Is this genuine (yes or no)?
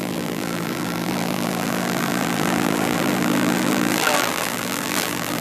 no